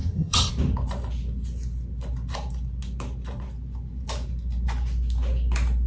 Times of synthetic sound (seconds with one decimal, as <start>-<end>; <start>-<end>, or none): 0.0-0.5